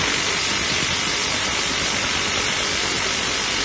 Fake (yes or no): no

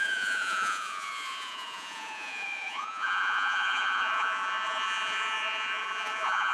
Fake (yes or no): yes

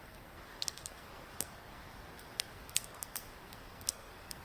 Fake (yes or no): yes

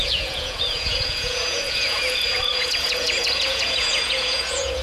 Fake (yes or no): yes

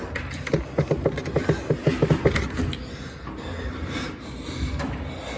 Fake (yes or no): no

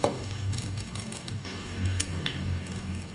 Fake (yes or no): yes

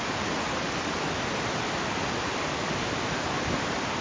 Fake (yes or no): no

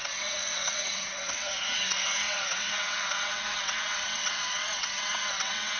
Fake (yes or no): yes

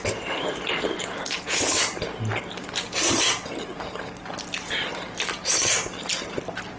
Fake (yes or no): no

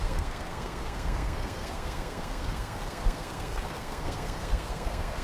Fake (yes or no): yes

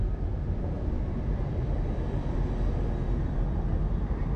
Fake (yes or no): no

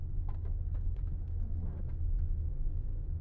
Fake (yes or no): no